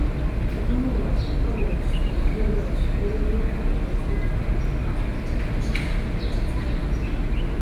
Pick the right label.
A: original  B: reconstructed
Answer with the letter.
A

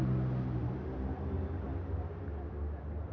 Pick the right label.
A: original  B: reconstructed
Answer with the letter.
A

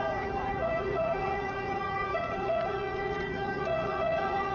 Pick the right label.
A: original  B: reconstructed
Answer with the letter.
B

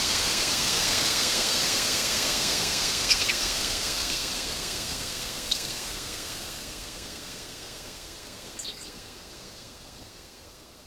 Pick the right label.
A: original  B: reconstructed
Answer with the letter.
B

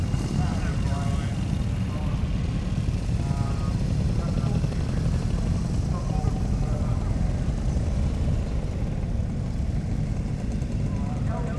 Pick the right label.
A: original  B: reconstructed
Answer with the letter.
A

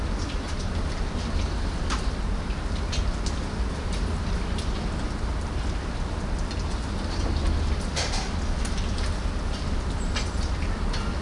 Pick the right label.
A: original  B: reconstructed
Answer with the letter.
A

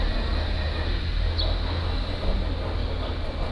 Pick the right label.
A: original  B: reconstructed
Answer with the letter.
A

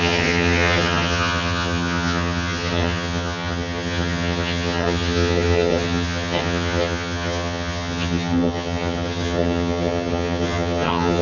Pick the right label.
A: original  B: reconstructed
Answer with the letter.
B